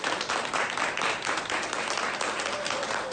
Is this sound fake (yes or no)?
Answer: no